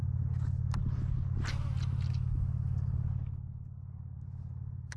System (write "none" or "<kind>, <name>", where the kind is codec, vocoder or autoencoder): none